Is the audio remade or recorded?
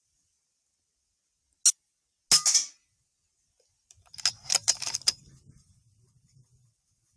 recorded